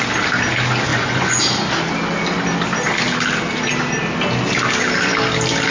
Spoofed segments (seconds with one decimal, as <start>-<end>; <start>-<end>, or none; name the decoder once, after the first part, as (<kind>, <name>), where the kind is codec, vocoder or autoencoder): 0.9-1.4 (vocoder, Vocos)